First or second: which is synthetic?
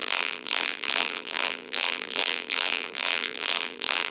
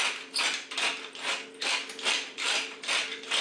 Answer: first